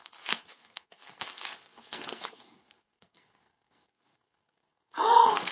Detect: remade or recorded remade